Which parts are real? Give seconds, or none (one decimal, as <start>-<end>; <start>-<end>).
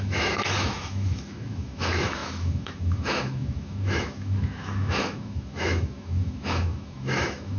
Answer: none